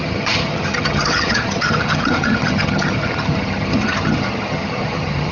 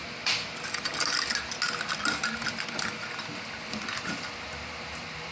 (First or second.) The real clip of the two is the second